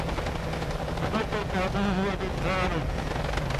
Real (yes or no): yes